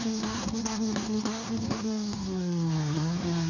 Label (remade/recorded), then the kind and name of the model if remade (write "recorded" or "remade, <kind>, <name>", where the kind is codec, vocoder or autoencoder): remade, codec, SNAC